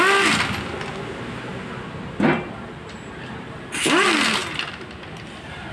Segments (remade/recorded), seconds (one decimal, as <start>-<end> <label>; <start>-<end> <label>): 0.0-5.7 recorded